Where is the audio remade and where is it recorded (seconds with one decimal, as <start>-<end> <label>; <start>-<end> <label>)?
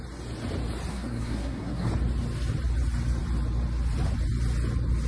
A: 0.0-0.9 recorded; 0.9-1.9 remade; 1.9-5.1 recorded